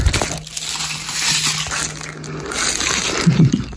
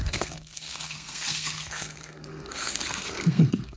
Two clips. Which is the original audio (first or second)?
first